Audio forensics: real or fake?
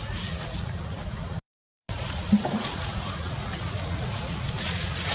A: fake